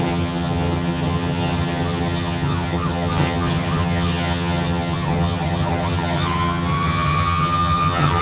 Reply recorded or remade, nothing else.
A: remade